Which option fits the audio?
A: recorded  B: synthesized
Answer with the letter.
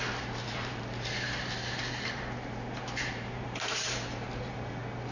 B